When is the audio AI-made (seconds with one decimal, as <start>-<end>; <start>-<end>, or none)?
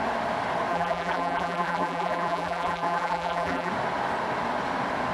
0.7-3.7